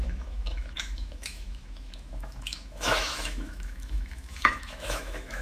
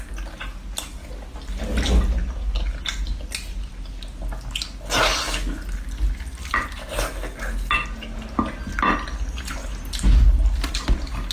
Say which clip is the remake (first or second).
first